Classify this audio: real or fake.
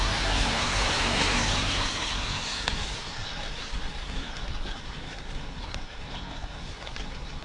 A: fake